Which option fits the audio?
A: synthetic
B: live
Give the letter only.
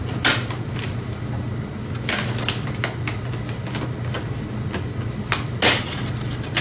B